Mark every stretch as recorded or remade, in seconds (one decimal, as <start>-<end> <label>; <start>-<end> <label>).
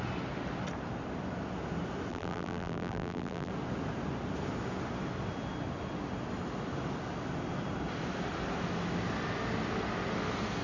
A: 0.0-2.1 recorded; 2.1-3.5 remade; 3.5-10.6 recorded